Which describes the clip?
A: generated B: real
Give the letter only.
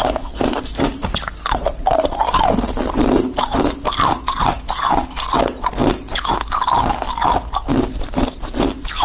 B